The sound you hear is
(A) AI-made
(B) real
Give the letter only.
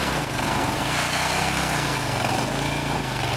A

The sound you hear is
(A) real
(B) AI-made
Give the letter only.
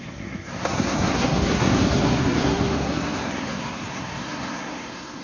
B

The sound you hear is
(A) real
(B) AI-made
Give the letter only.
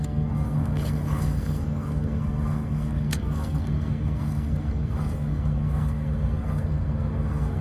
B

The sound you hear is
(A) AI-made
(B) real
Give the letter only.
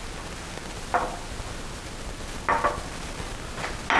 B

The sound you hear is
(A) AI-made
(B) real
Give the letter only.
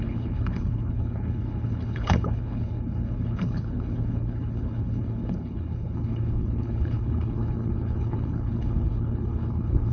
A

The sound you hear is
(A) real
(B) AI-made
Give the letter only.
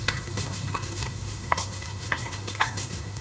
B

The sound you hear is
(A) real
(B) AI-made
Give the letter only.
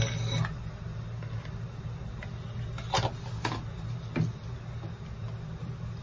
A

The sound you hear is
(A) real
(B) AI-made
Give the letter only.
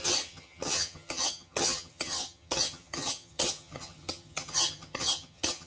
B